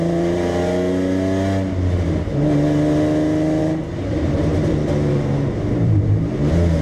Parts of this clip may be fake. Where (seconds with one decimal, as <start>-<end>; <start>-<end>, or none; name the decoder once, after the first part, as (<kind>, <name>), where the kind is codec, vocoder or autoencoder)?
0.0-0.6 (vocoder, BigVGAN v2); 3.6-4.5; 5.1-6.8